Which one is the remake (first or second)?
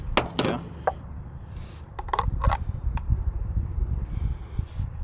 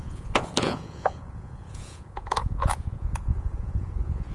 second